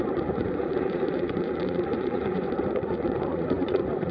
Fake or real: fake